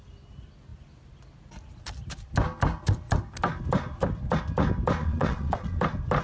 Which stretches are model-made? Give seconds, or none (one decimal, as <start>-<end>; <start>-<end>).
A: 5.0-5.8